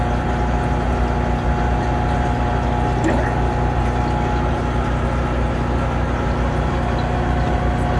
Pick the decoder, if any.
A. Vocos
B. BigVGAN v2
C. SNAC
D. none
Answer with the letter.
D